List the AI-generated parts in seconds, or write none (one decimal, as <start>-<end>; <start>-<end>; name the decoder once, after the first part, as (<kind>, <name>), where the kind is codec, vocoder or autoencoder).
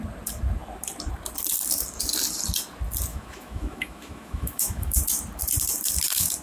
3.1-5.0 (autoencoder, DAC-VAE)